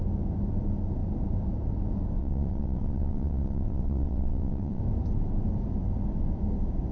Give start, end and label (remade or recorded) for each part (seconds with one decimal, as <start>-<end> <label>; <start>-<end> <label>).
0.0-2.2 recorded; 2.2-4.8 remade; 4.8-6.9 recorded